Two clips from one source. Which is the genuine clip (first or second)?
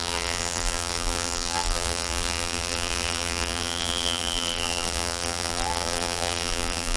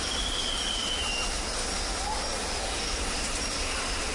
second